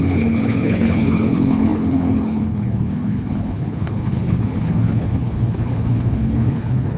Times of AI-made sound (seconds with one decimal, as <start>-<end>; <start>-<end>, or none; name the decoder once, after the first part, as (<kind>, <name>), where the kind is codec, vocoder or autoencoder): 0.0-7.0 (codec, HILCodec)